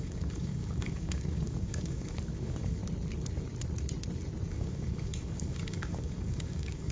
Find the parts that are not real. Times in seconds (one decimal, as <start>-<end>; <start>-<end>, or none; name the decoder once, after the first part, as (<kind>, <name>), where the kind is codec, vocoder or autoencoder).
0.0-2.8 (codec, DAC); 4.5-6.9